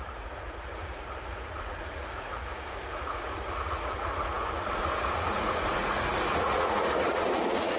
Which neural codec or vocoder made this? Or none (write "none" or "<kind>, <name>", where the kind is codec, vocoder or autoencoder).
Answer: vocoder, Vocos